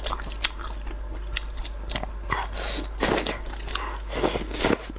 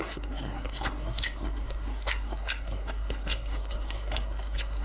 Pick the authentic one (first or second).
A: first